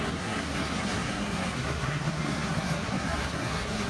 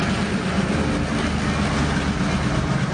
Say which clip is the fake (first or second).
first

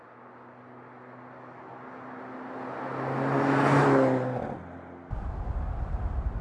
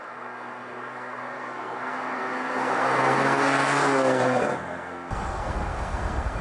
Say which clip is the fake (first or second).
second